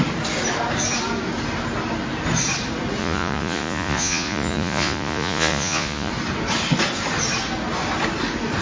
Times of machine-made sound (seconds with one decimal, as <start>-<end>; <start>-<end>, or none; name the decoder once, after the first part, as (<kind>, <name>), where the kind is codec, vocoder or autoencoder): 3.0-6.1 (vocoder, Vocos)